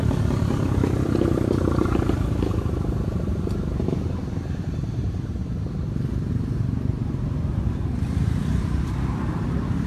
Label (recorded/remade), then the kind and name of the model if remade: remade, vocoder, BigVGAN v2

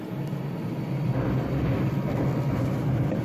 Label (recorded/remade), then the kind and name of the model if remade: recorded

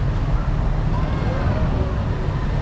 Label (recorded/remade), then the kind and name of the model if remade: recorded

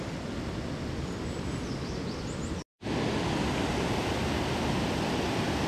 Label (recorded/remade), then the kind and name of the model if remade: recorded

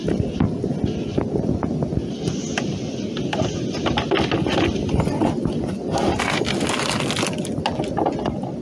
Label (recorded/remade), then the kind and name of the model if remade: recorded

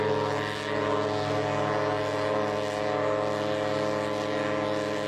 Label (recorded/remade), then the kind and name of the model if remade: recorded